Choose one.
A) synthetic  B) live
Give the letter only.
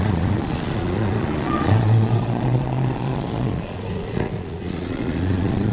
A